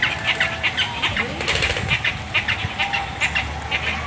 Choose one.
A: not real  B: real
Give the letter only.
B